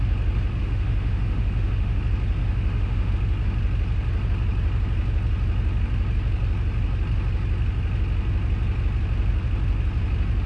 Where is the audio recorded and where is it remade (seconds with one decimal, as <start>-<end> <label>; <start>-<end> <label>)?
0.0-0.6 recorded; 0.6-2.0 remade; 2.0-2.4 recorded; 2.4-3.1 remade; 3.1-10.5 recorded